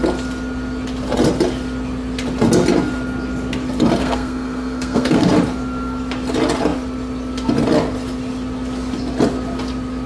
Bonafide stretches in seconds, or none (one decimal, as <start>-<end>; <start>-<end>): 0.0-4.0; 5.3-10.1